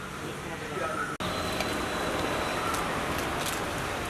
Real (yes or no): yes